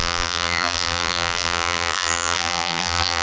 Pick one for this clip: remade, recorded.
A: remade